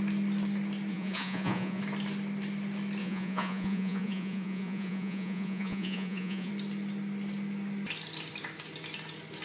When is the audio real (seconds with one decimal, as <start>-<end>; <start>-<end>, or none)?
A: 0.0-0.9; 1.8-3.0; 6.5-9.4